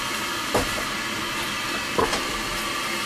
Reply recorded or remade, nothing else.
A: recorded